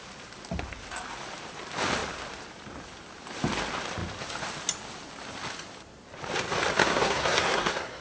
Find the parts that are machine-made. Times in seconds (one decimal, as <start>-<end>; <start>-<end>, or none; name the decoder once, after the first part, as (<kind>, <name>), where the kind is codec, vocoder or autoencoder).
6.8-8.0 (codec, SNAC)